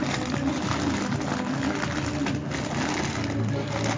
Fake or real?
real